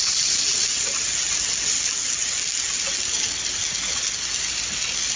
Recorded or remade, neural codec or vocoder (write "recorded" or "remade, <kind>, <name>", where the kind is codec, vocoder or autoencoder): recorded